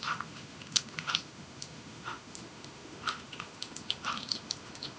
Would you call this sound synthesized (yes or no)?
yes